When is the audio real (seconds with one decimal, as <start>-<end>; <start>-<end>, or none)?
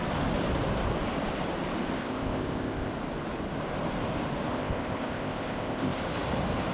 0.0-2.0; 2.9-4.5; 6.0-6.7